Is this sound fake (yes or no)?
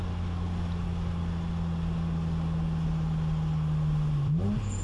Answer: no